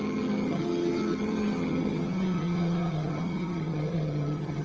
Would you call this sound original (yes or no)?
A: no